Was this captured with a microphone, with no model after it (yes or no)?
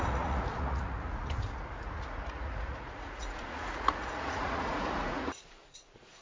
no